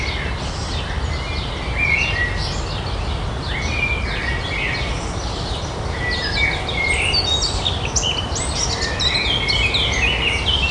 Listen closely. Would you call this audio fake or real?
real